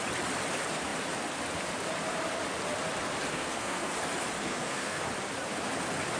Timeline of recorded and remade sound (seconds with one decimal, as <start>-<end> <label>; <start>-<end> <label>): 0.0-3.3 recorded; 3.3-3.9 remade; 3.9-4.4 recorded; 4.4-5.0 remade; 5.0-6.2 recorded